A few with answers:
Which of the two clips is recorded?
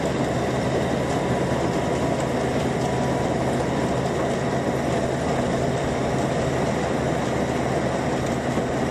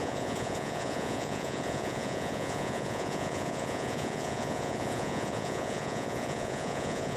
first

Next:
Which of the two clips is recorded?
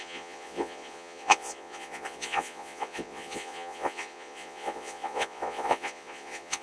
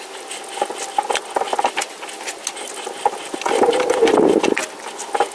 second